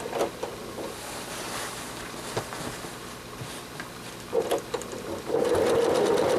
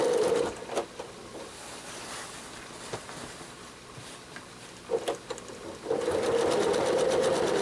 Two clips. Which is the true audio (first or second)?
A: first